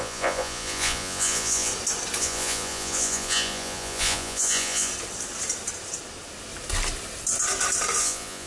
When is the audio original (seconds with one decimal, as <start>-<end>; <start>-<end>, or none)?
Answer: 1.7-2.2; 4.9-8.0